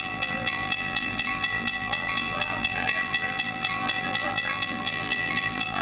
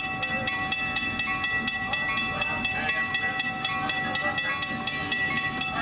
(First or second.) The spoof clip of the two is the first